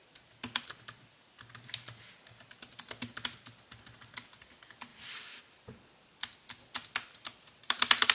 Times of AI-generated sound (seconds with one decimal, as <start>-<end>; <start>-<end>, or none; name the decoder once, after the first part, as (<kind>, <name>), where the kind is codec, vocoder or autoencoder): 4.9-5.4 (vocoder, BigVGAN v2)